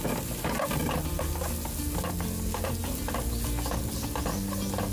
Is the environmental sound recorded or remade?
recorded